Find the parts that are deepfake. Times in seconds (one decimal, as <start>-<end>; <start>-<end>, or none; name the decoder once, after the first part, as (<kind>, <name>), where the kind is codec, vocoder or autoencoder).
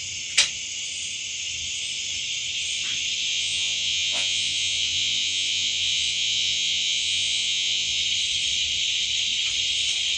3.3-8.0 (vocoder, Vocos)